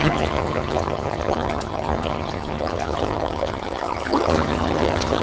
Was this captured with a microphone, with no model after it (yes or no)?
no